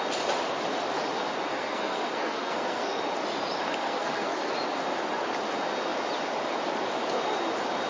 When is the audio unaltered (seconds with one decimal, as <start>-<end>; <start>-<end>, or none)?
0.0-1.5; 3.0-3.8; 4.5-7.9